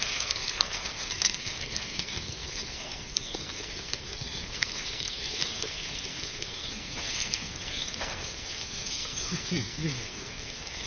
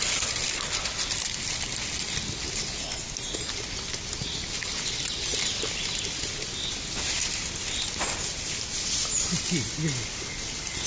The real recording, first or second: second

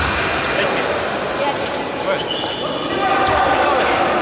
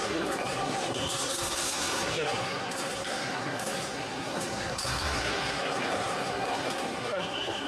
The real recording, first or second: first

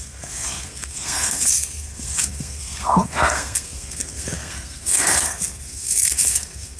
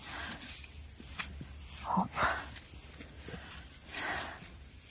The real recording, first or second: second